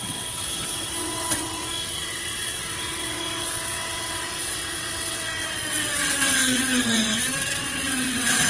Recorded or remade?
remade